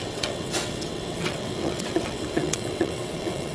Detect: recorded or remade remade